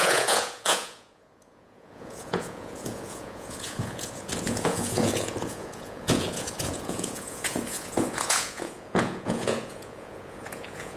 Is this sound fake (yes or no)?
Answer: yes